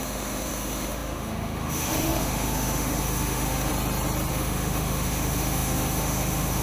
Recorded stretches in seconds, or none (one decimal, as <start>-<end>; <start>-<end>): 3.7-4.3